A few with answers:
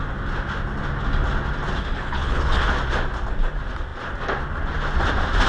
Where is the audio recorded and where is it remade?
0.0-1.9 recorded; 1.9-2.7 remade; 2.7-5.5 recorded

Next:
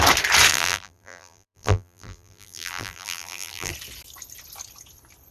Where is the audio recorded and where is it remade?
0.0-0.5 recorded; 0.5-3.7 remade; 3.7-5.3 recorded

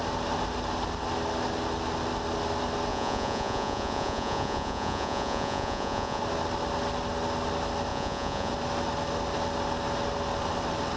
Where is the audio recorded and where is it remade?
0.0-2.9 recorded; 2.9-6.2 remade; 6.2-7.9 recorded; 7.9-8.5 remade; 8.5-11.0 recorded

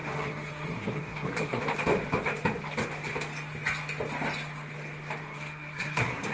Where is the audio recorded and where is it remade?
0.0-1.6 remade; 1.6-5.2 recorded; 5.2-6.3 remade

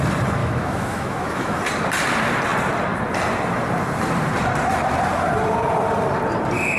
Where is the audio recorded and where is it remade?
0.0-0.4 recorded; 0.4-1.6 remade; 1.6-6.8 recorded

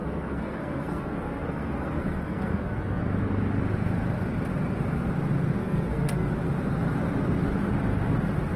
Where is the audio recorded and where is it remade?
0.0-3.0 remade; 3.0-5.6 recorded; 5.6-6.3 remade; 6.3-8.6 recorded